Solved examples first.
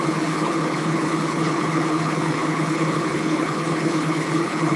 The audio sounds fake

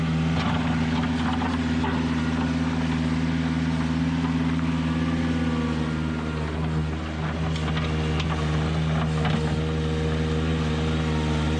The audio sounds real